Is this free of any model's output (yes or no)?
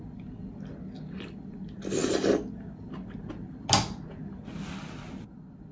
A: yes